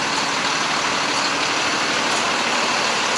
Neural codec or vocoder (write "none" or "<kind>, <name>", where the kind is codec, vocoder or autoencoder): none